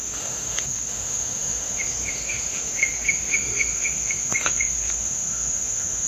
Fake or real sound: fake